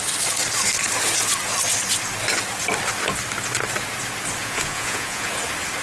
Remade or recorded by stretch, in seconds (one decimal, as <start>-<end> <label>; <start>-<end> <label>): 0.0-4.4 recorded; 4.4-5.3 remade; 5.3-5.8 recorded